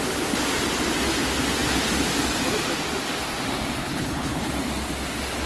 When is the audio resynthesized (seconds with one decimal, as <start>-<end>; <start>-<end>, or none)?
3.8-4.5